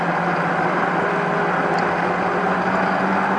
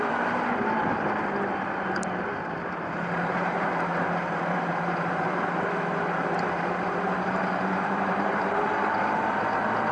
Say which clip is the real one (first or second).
first